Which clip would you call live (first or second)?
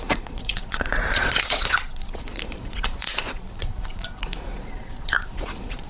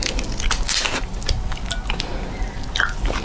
second